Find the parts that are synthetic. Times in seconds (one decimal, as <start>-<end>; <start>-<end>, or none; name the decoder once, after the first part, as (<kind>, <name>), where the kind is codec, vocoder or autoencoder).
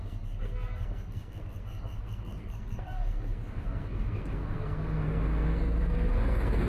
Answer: 0.0-6.7 (codec, SNAC)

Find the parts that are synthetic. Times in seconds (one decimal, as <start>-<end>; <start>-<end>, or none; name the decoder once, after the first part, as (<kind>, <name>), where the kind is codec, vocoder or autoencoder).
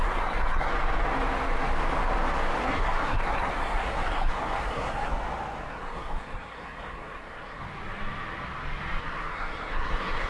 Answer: 0.0-0.7 (codec, SNAC); 2.6-5.1; 5.7-7.6; 9.0-10.3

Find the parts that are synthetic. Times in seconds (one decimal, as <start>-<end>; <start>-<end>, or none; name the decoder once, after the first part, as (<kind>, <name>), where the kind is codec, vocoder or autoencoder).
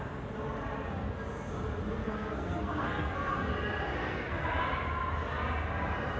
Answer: 2.0-3.3 (codec, SNAC); 4.0-4.6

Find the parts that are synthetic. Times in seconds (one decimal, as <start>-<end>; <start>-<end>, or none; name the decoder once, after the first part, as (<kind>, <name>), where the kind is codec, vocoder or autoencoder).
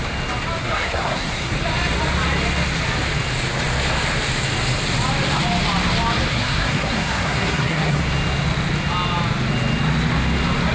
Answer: 0.6-1.5 (codec, SNAC); 6.3-8.0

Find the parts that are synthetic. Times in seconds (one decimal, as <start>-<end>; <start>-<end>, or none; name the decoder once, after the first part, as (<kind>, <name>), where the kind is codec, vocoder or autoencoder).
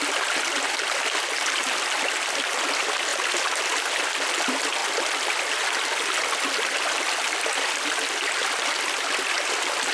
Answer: none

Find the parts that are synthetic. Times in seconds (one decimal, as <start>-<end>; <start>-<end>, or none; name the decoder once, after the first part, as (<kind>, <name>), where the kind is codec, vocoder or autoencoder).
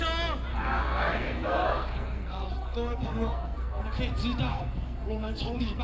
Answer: 0.5-4.0 (codec, SNAC); 4.5-5.8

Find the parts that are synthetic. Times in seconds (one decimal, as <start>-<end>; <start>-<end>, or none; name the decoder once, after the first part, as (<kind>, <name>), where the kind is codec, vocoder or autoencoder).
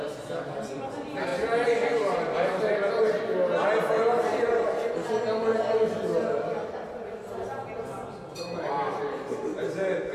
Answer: none